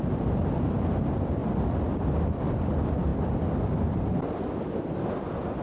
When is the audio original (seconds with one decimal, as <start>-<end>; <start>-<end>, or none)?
0.0-5.6